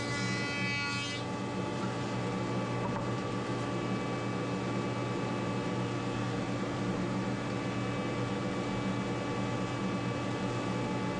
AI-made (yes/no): no